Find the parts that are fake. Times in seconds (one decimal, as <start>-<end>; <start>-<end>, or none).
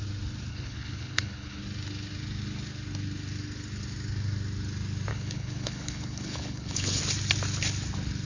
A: 0.5-1.6; 5.1-7.0